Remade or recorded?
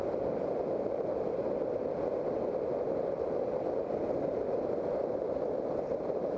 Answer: recorded